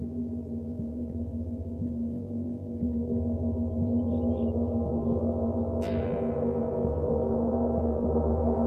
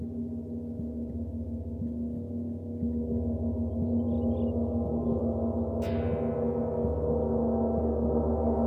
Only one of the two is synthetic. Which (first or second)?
first